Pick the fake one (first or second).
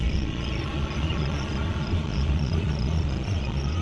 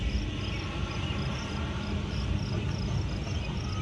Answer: first